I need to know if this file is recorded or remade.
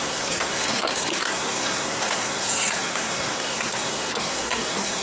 remade